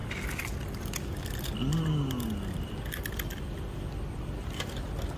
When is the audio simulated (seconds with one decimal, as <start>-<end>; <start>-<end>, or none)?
none